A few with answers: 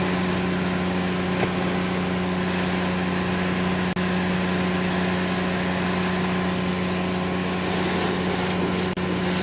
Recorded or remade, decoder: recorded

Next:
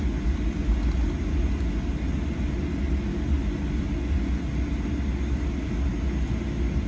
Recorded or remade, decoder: recorded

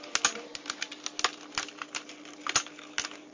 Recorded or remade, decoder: recorded